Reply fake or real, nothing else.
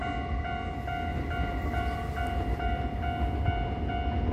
real